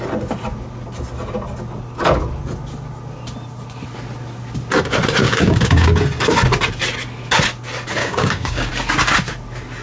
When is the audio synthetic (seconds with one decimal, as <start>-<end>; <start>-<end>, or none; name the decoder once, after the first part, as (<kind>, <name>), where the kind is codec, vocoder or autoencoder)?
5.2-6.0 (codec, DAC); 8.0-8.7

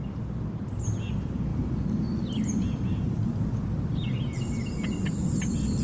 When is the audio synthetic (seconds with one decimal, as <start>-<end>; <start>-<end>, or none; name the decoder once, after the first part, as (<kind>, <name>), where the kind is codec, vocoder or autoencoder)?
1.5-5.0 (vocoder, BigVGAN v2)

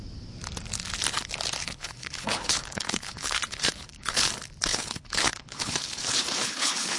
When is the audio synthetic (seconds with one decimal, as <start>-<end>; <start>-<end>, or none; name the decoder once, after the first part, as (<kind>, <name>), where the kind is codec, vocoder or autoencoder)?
1.6-4.3 (codec, HILCodec); 4.7-7.0